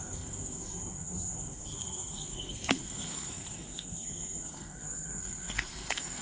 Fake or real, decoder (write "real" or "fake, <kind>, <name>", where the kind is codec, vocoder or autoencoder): fake, codec, SNAC